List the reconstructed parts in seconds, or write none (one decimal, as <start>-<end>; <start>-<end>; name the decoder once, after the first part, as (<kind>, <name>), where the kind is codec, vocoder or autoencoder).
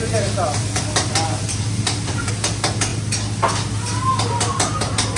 0.0-2.3 (vocoder, BigVGAN v2)